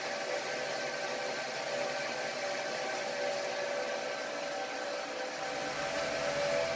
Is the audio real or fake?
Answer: real